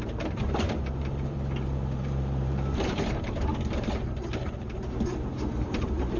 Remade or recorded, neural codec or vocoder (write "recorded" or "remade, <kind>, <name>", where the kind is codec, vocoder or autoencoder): remade, vocoder, BigVGAN v2